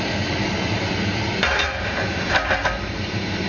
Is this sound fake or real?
real